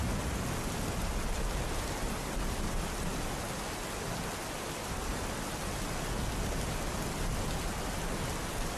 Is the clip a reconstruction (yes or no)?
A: no